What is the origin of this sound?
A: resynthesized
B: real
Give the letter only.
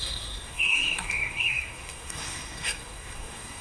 A